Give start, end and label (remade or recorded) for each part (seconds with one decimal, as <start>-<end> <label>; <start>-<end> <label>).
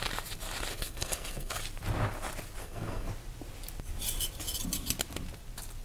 0.0-0.7 recorded; 0.7-1.6 remade; 1.6-2.6 recorded; 2.6-3.1 remade; 3.1-5.8 recorded